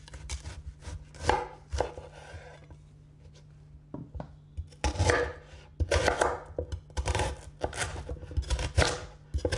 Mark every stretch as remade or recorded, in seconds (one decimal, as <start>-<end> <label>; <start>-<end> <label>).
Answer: 0.0-9.6 recorded